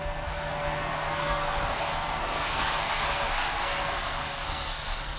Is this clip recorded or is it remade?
remade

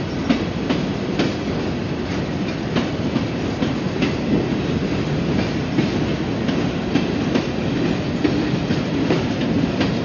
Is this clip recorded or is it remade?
recorded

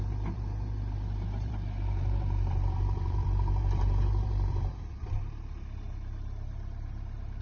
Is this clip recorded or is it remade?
remade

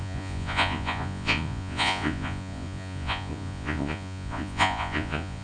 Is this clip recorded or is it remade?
remade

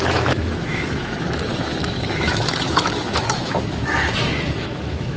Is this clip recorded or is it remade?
remade